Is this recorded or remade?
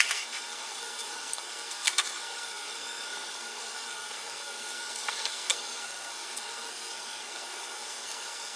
remade